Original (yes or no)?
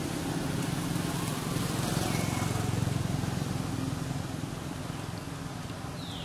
yes